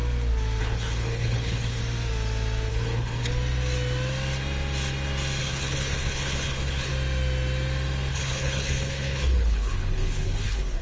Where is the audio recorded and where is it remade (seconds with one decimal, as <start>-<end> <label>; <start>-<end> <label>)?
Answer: 0.0-0.6 recorded; 0.6-1.8 remade; 1.8-2.7 recorded; 2.7-3.2 remade; 3.2-5.4 recorded; 5.4-6.9 remade; 6.9-8.1 recorded; 8.1-10.8 remade